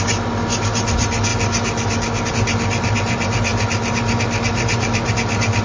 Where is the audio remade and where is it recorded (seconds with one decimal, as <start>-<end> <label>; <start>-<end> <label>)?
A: 0.0-5.6 recorded